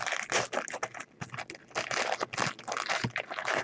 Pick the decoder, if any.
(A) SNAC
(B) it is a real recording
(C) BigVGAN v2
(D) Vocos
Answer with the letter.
B